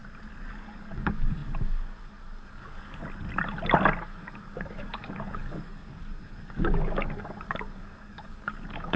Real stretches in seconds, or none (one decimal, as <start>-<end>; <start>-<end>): 0.0-0.5; 3.0-4.0